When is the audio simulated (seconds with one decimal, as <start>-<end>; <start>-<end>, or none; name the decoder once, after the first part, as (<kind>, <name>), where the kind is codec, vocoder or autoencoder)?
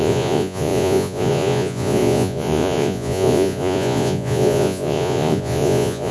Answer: 0.0-6.1 (vocoder, Vocos)